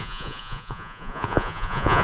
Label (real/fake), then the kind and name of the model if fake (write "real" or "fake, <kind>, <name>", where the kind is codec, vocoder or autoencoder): fake, vocoder, Vocos